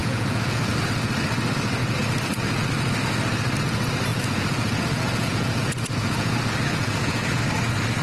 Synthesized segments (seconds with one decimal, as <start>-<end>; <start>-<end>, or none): 0.0-0.6; 4.1-7.4